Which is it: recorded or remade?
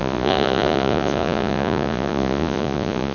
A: remade